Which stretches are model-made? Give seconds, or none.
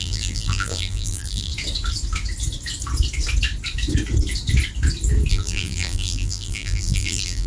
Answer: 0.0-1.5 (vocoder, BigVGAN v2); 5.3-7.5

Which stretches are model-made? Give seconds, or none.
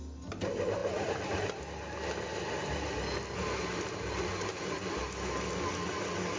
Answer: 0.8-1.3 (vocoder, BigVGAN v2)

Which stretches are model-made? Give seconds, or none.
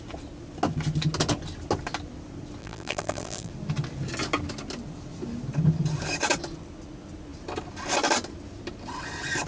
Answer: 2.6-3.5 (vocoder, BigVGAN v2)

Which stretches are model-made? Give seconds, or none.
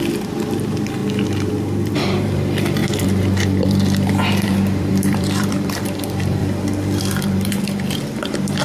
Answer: 0.0-1.0 (vocoder, BigVGAN v2); 1.5-6.4; 7.0-8.6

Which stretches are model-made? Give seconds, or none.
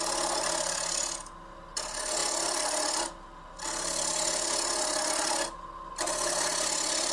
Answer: none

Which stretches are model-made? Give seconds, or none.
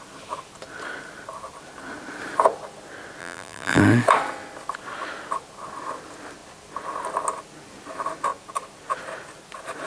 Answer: 3.2-3.8 (vocoder, BigVGAN v2)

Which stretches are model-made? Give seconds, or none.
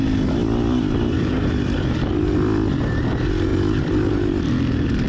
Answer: 0.4-2.8 (vocoder, BigVGAN v2); 3.5-4.1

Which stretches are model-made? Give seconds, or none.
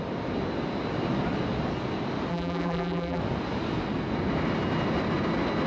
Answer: 2.3-3.2 (vocoder, BigVGAN v2)